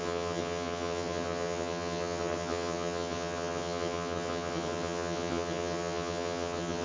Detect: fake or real fake